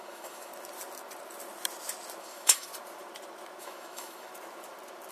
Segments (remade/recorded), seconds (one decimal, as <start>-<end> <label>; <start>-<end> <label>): 0.0-0.5 remade; 0.5-2.2 recorded; 2.2-2.7 remade; 2.7-3.6 recorded; 3.6-4.3 remade; 4.3-5.1 recorded